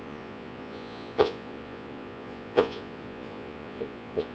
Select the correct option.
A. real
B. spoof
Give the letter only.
B